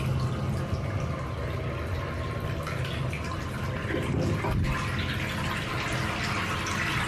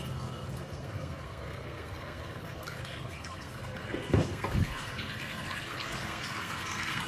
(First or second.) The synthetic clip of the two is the second